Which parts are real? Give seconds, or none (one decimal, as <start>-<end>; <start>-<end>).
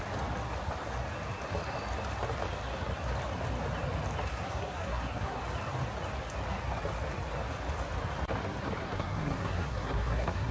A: 0.0-4.3; 5.4-8.8